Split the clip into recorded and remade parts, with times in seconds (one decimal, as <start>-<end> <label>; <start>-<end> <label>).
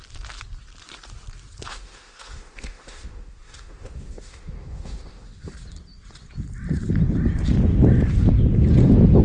0.0-1.7 recorded; 1.7-5.5 remade; 5.5-9.2 recorded